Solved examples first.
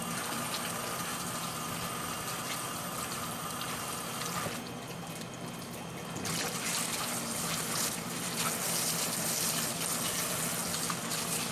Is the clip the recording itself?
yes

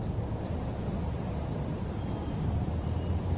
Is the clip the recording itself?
yes